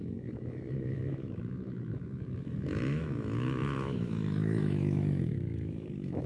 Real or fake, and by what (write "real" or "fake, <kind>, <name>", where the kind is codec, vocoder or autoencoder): fake, autoencoder, DAC-VAE